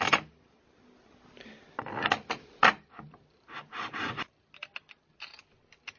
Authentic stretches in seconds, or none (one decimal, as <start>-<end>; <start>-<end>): 0.0-6.0